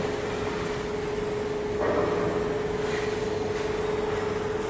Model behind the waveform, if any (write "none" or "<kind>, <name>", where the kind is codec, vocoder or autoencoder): none